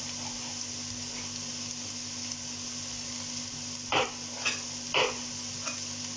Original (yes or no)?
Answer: yes